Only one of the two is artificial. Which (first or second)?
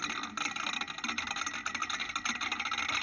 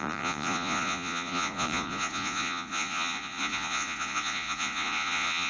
second